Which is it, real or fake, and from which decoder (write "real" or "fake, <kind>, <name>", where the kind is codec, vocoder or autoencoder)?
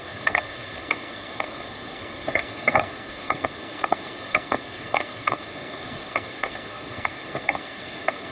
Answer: fake, codec, SNAC